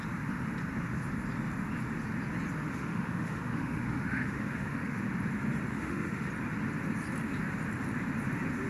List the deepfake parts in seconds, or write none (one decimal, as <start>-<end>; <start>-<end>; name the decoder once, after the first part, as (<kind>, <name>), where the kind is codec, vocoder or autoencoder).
2.7-5.0 (autoencoder, DAC-VAE); 5.7-6.3